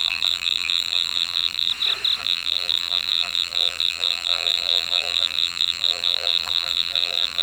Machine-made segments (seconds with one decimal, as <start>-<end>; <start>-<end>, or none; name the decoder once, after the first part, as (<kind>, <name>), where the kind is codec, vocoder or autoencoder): 0.0-1.7 (vocoder, BigVGAN v2); 2.2-7.4